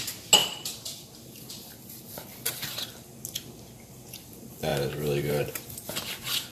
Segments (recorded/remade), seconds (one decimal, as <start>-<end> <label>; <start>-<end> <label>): 0.0-0.4 recorded; 0.4-2.9 remade; 2.9-4.7 recorded; 4.7-5.5 remade; 5.5-6.5 recorded